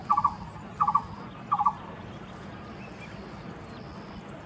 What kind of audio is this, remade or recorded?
recorded